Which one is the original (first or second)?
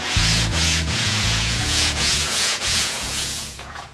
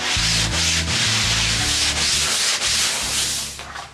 second